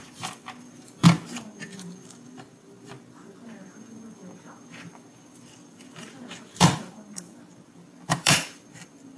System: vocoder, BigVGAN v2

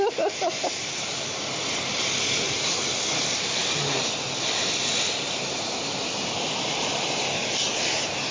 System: none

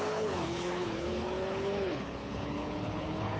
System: codec, HILCodec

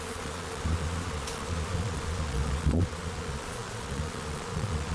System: vocoder, Vocos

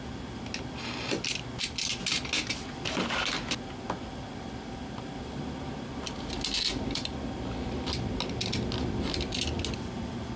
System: none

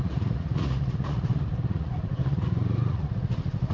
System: vocoder, Vocos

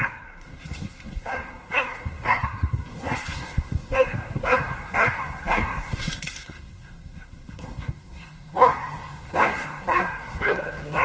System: codec, SNAC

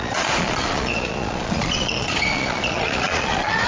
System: vocoder, Vocos